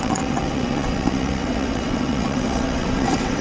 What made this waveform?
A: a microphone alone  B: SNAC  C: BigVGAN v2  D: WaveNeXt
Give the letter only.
D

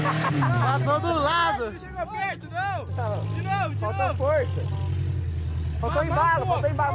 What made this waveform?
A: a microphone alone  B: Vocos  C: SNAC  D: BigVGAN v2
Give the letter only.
A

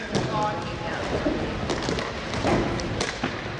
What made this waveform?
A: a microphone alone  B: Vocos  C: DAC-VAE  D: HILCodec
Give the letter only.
A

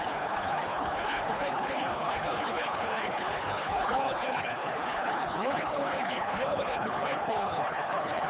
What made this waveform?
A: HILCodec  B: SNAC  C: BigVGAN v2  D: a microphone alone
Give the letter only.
A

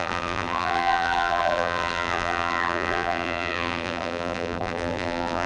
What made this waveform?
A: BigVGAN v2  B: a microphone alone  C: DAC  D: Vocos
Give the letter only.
A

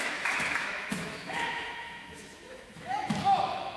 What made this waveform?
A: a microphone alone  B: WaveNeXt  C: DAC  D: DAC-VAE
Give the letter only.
D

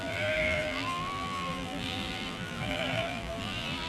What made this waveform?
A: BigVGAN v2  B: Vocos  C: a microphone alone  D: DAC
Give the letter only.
A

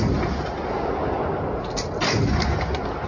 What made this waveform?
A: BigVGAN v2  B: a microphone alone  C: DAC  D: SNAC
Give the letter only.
B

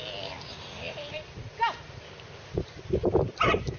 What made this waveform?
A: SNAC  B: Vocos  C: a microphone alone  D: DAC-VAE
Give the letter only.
C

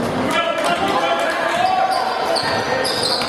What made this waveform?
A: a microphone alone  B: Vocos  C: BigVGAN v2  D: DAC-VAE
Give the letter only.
A